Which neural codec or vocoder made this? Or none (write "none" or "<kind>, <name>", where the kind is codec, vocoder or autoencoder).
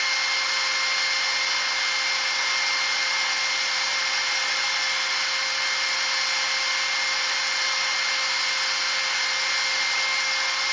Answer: none